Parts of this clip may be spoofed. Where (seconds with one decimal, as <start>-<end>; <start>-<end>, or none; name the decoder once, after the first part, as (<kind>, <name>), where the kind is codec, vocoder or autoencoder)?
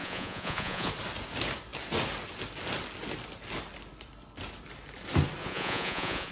0.0-0.9 (vocoder, Vocos); 5.4-6.3